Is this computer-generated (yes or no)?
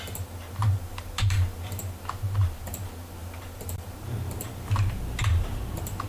yes